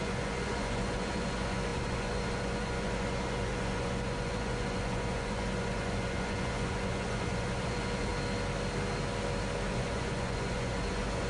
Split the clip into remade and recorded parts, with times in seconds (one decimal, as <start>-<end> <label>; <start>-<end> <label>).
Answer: 0.0-8.1 remade; 8.1-9.7 recorded; 9.7-11.3 remade